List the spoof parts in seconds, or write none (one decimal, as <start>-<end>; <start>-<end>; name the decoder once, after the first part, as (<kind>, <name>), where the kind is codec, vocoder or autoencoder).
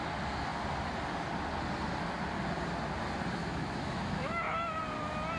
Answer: 3.4-4.8 (autoencoder, DAC-VAE)